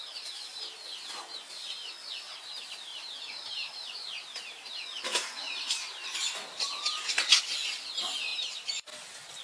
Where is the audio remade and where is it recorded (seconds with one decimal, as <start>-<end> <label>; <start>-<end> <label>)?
0.0-2.9 recorded; 2.9-7.4 remade; 7.4-8.3 recorded; 8.3-8.8 remade; 8.8-9.4 recorded